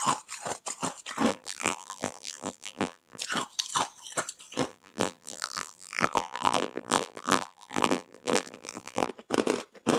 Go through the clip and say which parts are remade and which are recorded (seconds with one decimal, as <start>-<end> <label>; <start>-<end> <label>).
0.0-1.3 recorded; 1.3-3.2 remade; 3.2-4.7 recorded; 4.7-9.1 remade; 9.1-10.0 recorded